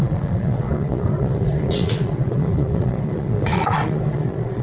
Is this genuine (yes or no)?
no